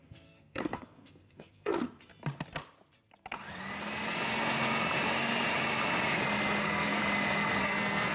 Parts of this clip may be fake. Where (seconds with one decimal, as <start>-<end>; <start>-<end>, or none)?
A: 0.0-1.7; 6.6-7.0; 7.6-8.1